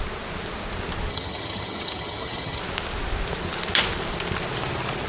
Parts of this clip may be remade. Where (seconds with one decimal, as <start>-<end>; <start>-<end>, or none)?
1.1-2.6

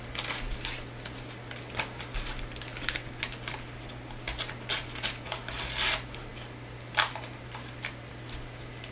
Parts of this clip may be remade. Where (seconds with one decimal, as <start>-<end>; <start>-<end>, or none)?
none

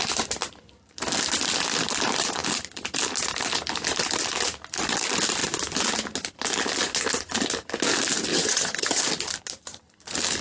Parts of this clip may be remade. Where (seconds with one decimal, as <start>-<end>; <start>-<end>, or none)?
8.3-9.0

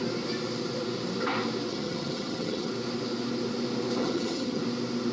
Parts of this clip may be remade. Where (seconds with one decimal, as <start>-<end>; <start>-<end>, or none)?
1.7-2.7; 4.0-4.6

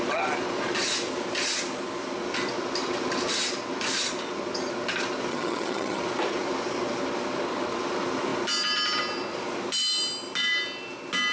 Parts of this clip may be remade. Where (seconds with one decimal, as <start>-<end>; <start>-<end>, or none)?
5.3-6.0

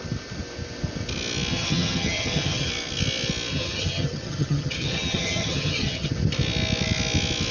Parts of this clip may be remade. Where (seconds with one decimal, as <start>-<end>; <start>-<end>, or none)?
1.5-2.7; 3.5-6.1